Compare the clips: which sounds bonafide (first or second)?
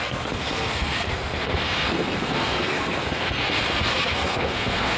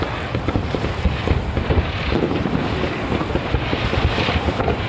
second